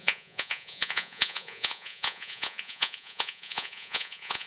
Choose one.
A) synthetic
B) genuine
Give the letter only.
A